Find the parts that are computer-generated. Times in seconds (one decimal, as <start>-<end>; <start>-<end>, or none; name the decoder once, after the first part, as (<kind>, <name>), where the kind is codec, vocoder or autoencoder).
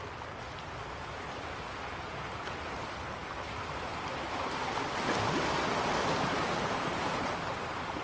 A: none